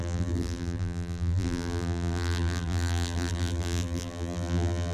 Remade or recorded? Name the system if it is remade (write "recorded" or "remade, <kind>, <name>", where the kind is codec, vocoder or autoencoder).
remade, vocoder, BigVGAN v2